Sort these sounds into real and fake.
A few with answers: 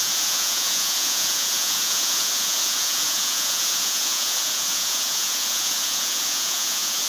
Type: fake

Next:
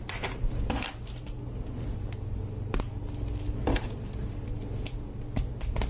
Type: real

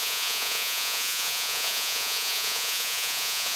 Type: fake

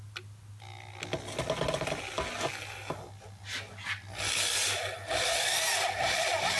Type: real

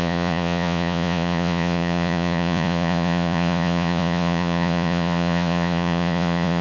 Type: fake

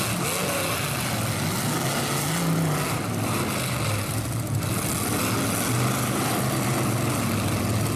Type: real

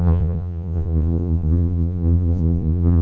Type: fake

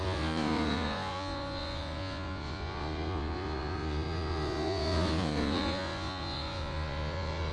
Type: fake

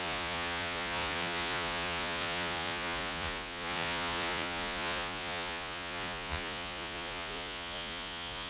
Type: fake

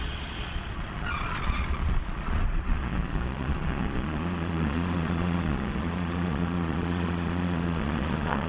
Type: fake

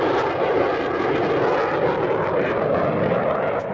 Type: real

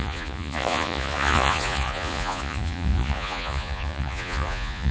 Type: fake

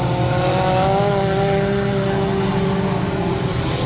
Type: real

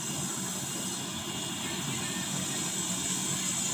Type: real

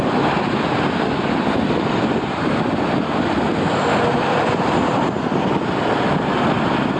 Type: real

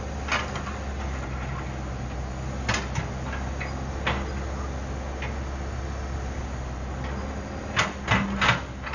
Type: real